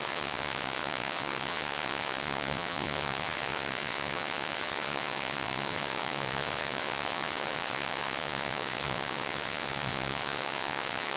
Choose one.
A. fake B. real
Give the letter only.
A